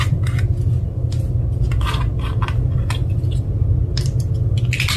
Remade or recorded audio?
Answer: recorded